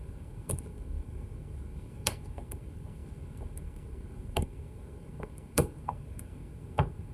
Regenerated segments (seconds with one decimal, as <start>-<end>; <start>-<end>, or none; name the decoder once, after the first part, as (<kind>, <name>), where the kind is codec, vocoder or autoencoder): 0.0-7.1 (codec, SNAC)